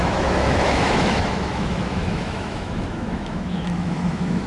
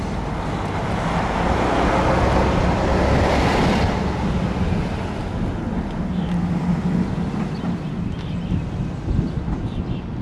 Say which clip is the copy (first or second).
first